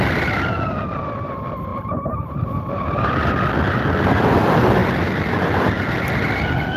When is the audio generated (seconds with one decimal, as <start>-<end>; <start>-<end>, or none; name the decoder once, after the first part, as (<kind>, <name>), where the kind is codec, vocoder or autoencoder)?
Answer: 1.7-3.3 (vocoder, BigVGAN v2)